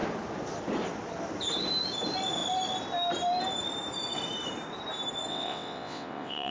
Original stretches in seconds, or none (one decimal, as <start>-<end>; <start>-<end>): 0.0-5.3